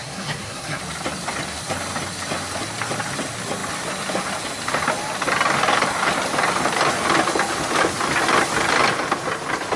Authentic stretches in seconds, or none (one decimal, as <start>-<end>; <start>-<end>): 0.8-9.8